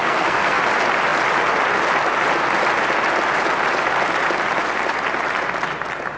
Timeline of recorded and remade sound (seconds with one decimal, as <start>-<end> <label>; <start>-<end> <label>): 0.0-0.6 remade; 0.6-6.2 recorded